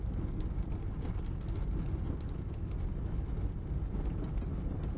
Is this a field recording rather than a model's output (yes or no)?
yes